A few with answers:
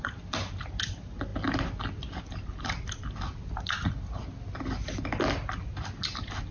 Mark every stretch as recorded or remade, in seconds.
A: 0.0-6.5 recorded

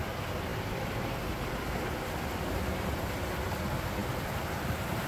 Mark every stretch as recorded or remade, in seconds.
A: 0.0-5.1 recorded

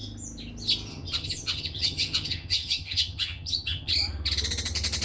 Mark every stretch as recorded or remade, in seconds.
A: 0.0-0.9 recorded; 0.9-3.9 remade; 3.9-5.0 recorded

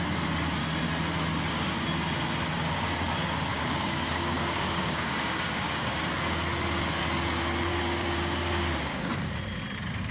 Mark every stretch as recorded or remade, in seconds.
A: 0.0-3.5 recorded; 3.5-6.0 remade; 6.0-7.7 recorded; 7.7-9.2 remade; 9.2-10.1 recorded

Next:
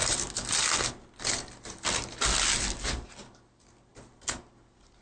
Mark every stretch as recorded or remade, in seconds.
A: 0.0-5.0 recorded